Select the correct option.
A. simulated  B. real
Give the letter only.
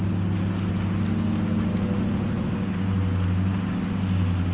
B